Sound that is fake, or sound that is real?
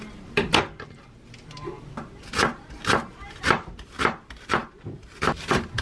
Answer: real